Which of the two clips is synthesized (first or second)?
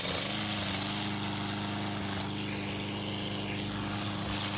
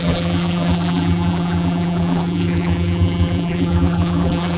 second